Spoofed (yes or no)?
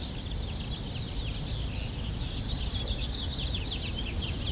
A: no